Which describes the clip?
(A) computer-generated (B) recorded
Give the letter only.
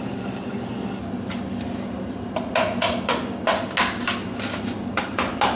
B